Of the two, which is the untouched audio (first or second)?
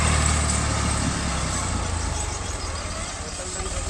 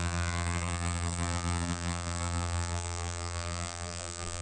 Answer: first